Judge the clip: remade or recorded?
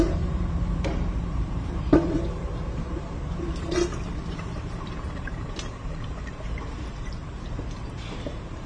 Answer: remade